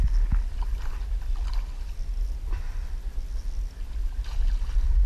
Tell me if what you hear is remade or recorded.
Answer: recorded